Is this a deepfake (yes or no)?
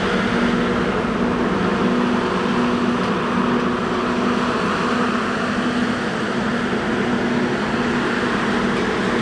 no